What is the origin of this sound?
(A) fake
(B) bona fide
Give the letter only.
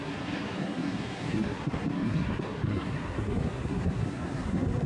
A